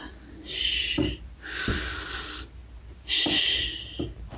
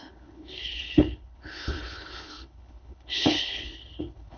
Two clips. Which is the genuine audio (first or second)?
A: first